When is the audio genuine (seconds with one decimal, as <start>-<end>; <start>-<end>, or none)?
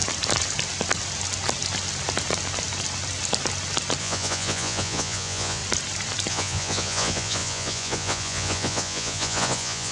0.0-4.0; 5.6-6.3